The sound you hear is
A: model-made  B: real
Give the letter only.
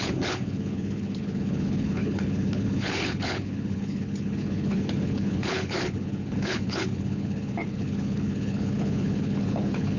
A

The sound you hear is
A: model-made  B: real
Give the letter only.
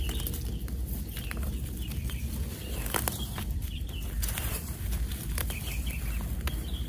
A